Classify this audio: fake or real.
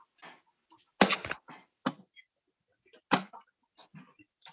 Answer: real